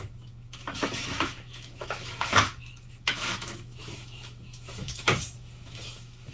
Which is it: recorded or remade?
remade